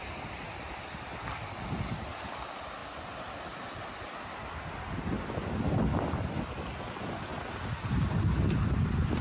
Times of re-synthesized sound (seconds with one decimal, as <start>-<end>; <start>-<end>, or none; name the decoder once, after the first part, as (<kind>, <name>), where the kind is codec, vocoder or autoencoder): none